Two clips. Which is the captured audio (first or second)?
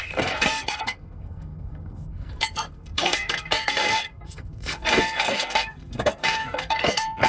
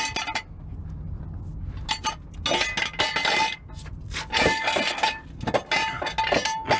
second